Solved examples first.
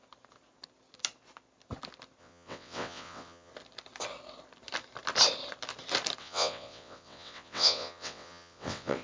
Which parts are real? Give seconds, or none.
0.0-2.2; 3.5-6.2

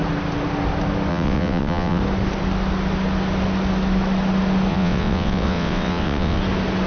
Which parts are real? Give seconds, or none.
0.0-1.1; 2.0-4.7; 6.4-6.9

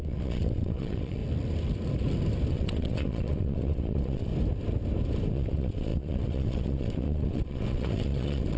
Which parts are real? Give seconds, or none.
1.2-2.5; 4.3-5.3

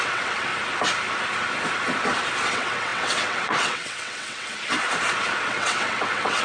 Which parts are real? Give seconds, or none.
0.5-2.5; 4.5-5.5